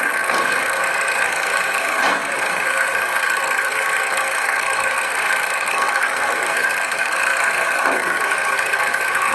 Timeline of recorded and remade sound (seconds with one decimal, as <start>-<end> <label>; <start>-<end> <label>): 0.0-9.3 remade